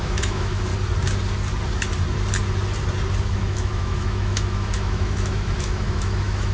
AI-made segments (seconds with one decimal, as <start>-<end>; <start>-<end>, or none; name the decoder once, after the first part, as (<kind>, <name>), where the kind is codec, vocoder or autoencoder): 0.0-0.7 (autoencoder, DAC-VAE); 3.2-6.5